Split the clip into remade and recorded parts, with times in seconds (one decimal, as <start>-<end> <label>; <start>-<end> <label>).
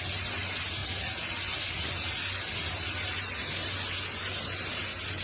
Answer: 0.0-5.2 recorded